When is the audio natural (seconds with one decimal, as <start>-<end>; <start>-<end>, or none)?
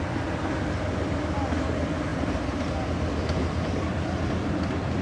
0.0-5.0